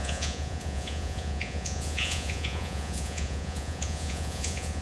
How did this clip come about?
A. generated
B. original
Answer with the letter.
A